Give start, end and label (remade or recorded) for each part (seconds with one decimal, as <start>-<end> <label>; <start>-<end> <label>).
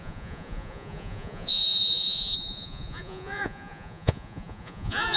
0.0-5.2 remade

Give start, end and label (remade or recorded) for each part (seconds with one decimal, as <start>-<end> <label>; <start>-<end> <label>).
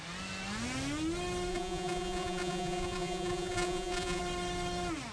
0.0-1.5 recorded; 1.5-4.2 remade; 4.2-5.1 recorded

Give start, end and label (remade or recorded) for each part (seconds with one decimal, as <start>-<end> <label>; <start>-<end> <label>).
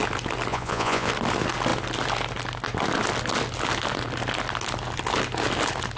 0.0-0.5 recorded; 0.5-1.1 remade; 1.1-6.0 recorded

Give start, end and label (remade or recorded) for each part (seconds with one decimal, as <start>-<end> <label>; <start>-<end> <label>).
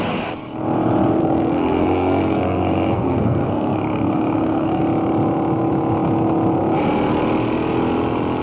0.0-1.2 recorded; 1.2-4.8 remade; 4.8-8.4 recorded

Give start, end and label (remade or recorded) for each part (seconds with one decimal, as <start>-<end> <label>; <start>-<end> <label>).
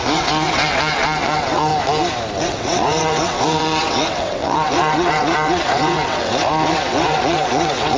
0.0-1.7 remade; 1.7-2.4 recorded; 2.4-8.0 remade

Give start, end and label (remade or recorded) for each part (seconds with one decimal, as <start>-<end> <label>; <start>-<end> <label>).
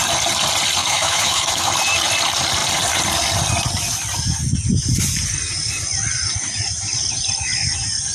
0.0-0.8 recorded; 0.8-1.7 remade; 1.7-8.1 recorded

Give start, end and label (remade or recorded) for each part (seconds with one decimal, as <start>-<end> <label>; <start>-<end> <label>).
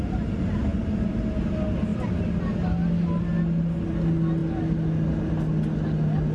0.0-6.3 recorded